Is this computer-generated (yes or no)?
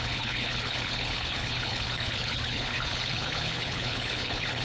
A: yes